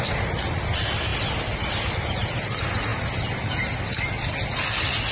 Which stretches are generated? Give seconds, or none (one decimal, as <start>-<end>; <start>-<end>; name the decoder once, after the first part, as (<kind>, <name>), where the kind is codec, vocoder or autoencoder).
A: none